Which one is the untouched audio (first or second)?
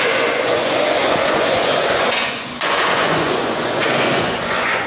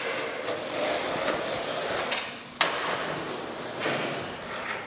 second